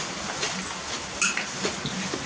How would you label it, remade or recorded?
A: recorded